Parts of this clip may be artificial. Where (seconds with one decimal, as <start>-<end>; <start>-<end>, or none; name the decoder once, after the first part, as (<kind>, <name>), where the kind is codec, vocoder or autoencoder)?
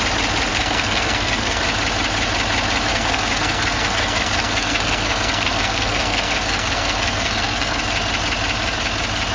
0.5-1.6 (codec, SNAC); 2.9-7.8